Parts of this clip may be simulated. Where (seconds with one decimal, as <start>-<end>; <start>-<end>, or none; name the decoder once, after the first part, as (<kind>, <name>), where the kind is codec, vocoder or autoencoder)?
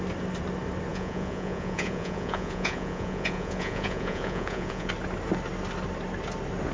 0.9-4.9 (vocoder, Vocos)